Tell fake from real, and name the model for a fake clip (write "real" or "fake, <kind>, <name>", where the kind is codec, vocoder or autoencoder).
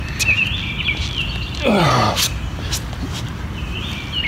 real